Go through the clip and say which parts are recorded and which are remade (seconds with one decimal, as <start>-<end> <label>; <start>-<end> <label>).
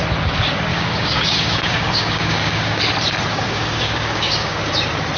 0.0-0.7 recorded; 0.7-2.8 remade; 2.8-3.3 recorded; 3.3-4.7 remade; 4.7-5.2 recorded